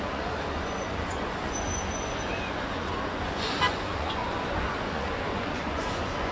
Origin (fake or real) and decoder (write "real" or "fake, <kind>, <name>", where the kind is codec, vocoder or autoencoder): fake, vocoder, Vocos